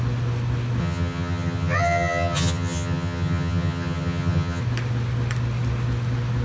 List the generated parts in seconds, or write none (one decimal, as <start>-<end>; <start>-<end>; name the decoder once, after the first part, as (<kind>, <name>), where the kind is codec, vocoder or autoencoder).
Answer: 0.8-4.6 (vocoder, HiFi-GAN)